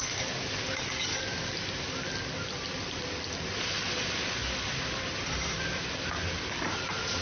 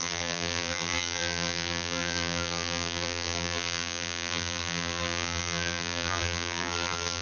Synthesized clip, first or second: second